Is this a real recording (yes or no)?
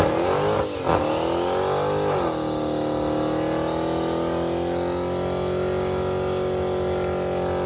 yes